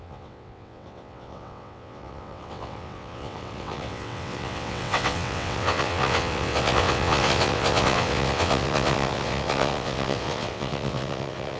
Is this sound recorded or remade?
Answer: remade